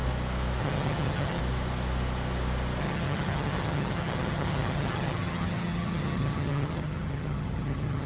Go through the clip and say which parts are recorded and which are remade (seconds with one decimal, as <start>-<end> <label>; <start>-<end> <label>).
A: 0.0-0.6 recorded; 0.6-1.4 remade; 1.4-2.8 recorded; 2.8-8.1 remade